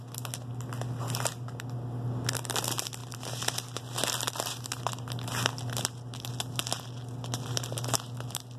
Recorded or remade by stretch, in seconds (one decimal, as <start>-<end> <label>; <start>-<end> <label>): 0.0-8.6 recorded